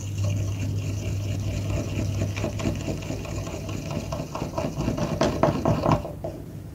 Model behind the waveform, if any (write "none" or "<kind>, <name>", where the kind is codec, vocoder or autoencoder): none